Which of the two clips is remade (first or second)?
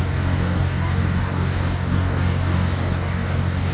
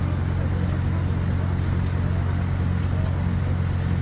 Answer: first